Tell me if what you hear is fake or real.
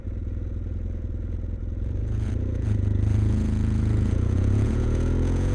fake